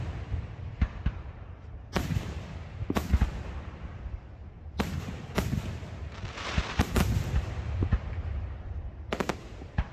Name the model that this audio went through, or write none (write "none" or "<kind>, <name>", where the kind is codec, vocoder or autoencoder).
vocoder, BigVGAN v2